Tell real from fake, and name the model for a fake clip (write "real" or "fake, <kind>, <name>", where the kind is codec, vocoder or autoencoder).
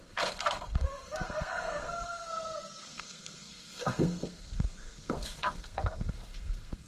fake, codec, SNAC